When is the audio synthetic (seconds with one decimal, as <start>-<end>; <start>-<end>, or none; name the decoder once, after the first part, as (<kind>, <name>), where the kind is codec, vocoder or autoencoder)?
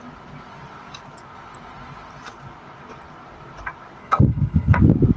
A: 4.0-4.8 (codec, SNAC)